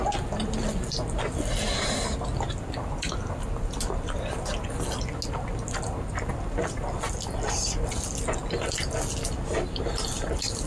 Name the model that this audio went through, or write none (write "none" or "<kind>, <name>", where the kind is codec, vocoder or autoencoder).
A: none